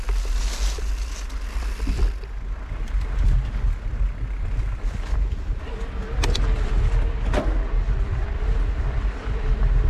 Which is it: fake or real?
real